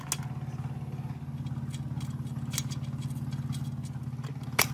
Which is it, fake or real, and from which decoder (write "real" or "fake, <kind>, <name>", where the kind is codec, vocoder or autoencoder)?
real